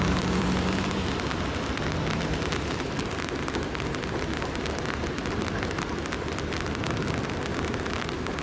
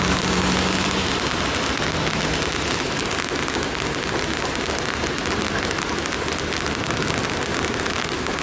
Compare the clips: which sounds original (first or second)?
second